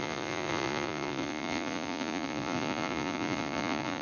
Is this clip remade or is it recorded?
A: remade